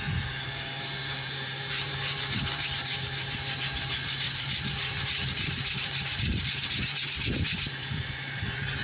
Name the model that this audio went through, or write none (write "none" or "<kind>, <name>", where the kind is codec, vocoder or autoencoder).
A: vocoder, BigVGAN v2